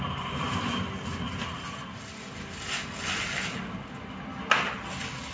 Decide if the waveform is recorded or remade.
recorded